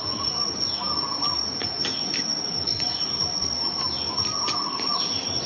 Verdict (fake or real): real